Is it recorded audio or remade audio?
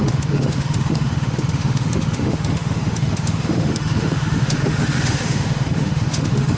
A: remade